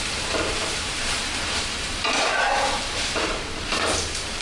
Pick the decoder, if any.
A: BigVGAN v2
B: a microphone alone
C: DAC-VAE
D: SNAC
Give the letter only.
A